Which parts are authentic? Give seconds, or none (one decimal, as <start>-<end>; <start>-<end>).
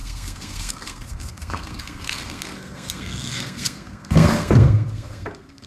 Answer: none